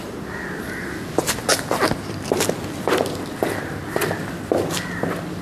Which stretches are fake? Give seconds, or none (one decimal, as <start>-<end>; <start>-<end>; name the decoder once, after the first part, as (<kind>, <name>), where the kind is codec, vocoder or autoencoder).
none

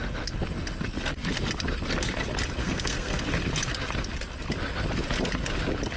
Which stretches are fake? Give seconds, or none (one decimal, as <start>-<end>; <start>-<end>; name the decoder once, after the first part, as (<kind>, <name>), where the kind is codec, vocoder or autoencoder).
2.6-3.2 (codec, SNAC)

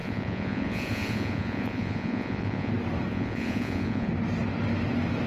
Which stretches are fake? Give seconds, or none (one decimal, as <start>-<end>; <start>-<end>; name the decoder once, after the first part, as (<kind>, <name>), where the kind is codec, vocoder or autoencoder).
0.0-2.7 (vocoder, Vocos); 3.1-4.1

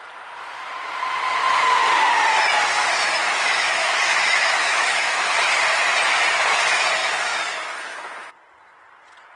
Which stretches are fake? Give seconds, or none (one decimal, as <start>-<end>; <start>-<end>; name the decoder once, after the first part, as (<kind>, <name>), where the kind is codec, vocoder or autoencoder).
3.2-5.5 (autoencoder, DAC-VAE); 7.0-8.3

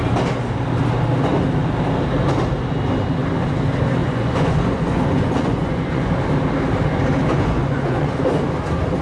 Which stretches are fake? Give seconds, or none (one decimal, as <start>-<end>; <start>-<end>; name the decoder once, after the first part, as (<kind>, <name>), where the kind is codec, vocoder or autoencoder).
4.0-6.1 (vocoder, Vocos); 7.3-8.2

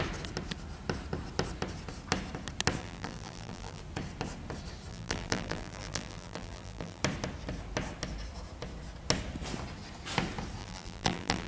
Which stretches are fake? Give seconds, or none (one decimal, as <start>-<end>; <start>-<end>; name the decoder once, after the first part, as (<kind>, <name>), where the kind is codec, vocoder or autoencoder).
2.8-3.8 (vocoder, BigVGAN v2); 4.9-7.0; 10.6-11.5

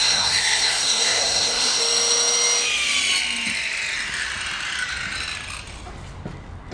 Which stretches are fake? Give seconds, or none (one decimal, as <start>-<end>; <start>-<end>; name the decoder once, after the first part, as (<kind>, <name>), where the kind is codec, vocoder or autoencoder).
0.0-1.8 (codec, SNAC)